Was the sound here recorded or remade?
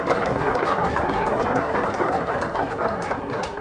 remade